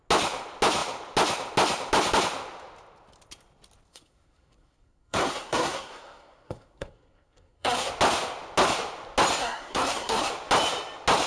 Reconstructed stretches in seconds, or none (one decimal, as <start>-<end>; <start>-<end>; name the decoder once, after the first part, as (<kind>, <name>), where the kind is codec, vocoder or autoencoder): 3.9-7.9 (codec, SNAC); 9.4-10.3